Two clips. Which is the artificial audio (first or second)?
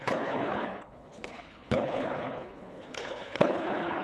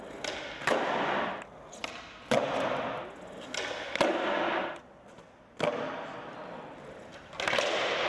first